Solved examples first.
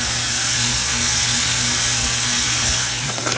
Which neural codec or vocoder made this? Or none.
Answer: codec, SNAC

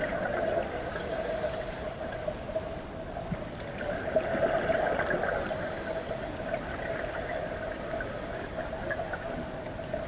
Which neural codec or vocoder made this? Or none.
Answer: none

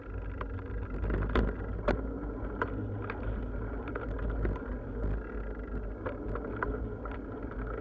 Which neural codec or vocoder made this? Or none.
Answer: none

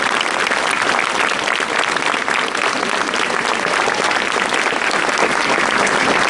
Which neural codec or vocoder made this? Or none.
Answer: none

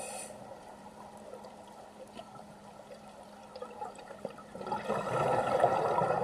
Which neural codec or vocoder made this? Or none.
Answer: vocoder, BigVGAN v2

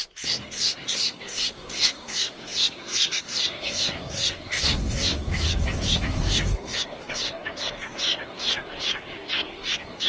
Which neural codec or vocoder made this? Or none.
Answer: codec, SNAC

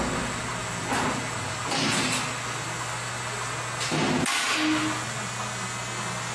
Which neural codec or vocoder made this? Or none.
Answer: none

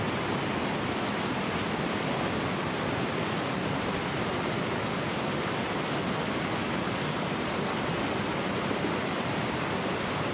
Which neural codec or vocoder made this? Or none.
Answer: none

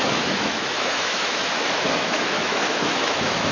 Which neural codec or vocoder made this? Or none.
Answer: autoencoder, DAC-VAE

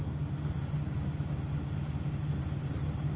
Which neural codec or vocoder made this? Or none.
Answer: none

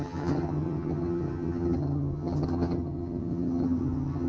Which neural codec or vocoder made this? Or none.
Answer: vocoder, HiFi-GAN